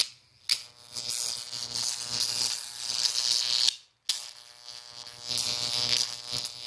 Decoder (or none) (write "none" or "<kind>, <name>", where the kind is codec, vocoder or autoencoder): none